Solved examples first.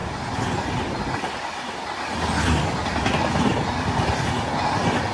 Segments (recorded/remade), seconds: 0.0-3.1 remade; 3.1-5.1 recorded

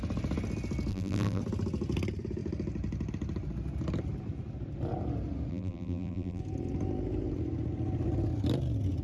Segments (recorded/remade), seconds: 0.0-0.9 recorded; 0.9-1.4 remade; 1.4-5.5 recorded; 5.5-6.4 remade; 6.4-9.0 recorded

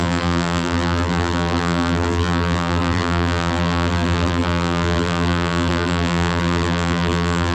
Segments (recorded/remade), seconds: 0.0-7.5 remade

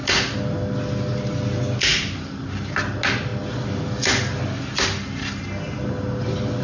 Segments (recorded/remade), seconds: 0.0-1.9 recorded; 1.9-2.4 remade; 2.4-6.6 recorded